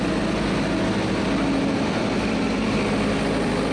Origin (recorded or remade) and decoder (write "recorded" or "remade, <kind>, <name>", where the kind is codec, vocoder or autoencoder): recorded